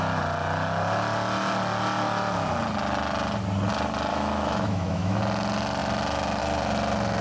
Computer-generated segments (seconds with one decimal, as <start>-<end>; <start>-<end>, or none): 4.1-5.2